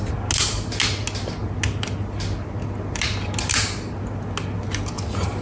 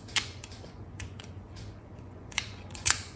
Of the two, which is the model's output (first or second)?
second